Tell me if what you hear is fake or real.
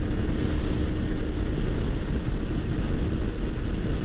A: real